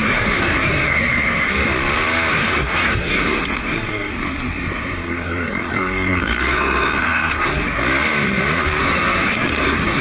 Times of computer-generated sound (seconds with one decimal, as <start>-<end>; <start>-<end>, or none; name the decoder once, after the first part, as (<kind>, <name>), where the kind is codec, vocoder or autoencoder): 0.0-1.5 (codec, SNAC); 2.3-7.8; 8.8-10.0